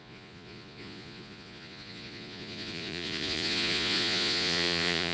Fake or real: fake